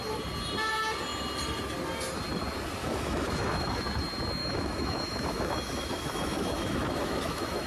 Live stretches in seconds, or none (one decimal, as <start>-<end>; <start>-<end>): 0.0-2.8; 3.8-4.4

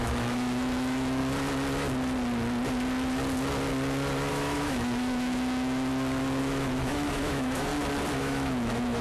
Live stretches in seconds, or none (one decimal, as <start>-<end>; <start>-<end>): 1.2-4.3; 5.9-6.4; 7.7-8.2

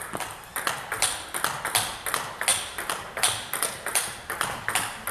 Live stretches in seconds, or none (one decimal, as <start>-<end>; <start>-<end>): 0.0-5.1

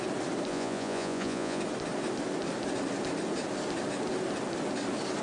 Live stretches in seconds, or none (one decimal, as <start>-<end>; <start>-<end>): 0.0-0.5; 1.6-5.2